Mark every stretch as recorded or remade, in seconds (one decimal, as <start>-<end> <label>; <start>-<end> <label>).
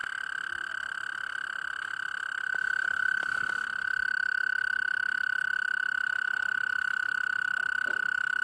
0.0-8.4 recorded